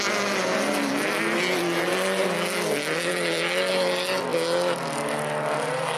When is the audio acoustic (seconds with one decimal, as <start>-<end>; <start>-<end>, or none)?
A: 0.0-6.0